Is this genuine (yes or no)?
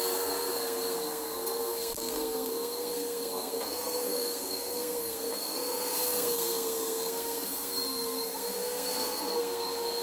no